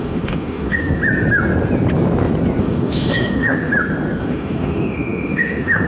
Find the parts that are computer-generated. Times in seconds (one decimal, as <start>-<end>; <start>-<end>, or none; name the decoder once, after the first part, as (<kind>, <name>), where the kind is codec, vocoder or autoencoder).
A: 0.0-1.0 (autoencoder, DAC-VAE); 2.6-3.7; 4.2-5.9